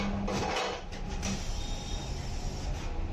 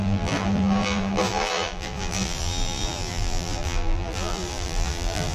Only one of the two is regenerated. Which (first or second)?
second